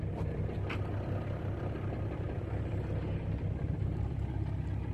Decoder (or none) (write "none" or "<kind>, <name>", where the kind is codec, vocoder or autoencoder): none